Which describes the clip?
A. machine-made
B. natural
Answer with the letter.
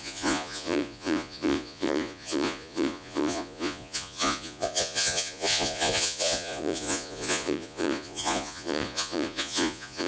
A